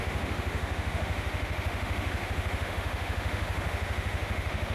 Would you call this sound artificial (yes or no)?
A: yes